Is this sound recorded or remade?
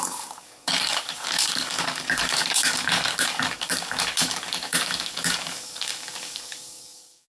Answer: remade